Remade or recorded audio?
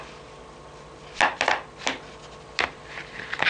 recorded